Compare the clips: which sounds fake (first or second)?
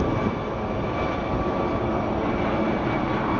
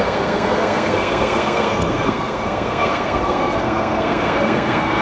second